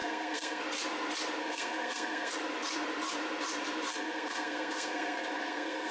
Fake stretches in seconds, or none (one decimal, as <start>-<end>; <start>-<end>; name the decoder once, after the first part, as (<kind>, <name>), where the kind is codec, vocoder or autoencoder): 0.0-0.6 (codec, SNAC); 1.4-2.3; 3.9-5.9